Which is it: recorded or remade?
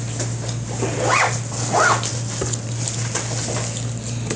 recorded